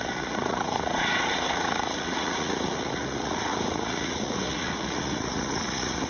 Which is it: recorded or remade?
remade